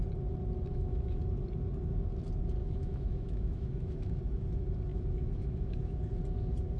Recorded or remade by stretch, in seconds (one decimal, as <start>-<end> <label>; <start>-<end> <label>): 0.0-0.7 recorded; 0.7-1.2 remade; 1.2-2.6 recorded; 2.6-4.2 remade; 4.2-4.9 recorded; 4.9-6.0 remade; 6.0-6.8 recorded